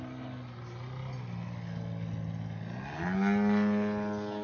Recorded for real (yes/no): yes